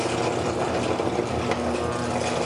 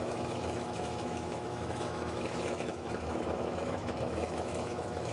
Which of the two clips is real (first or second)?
first